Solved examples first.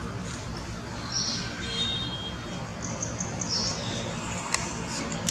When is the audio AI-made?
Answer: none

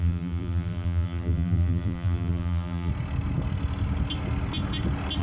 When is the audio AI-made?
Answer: 0.0-2.9 (vocoder, BigVGAN v2)